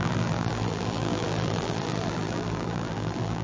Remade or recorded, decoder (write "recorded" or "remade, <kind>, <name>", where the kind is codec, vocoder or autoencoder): remade, vocoder, BigVGAN v2